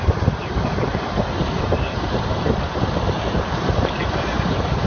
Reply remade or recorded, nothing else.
remade